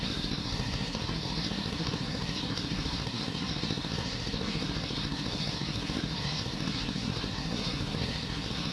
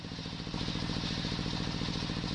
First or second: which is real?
second